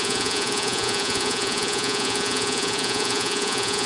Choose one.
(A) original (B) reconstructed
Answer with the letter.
B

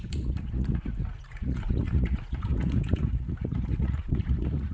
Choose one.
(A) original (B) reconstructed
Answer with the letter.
B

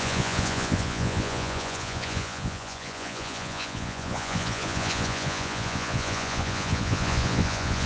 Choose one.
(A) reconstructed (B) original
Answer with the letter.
A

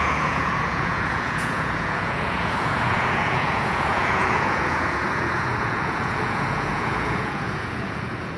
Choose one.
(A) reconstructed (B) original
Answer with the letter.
A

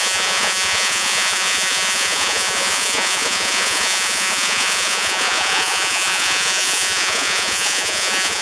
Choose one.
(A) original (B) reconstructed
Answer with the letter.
B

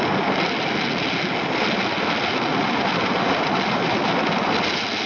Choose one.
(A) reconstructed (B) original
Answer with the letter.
B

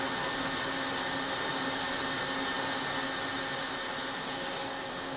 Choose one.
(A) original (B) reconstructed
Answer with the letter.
A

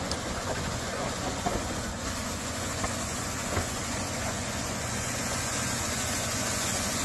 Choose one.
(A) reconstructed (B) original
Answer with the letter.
A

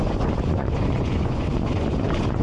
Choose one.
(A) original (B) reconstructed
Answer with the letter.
B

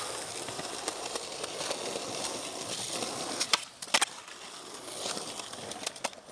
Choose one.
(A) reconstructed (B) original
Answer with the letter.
B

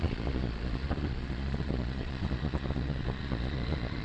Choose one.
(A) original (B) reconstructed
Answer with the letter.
B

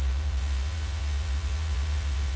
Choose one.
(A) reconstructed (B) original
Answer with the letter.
A